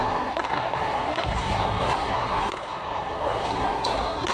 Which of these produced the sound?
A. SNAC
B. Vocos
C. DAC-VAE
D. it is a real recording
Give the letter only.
A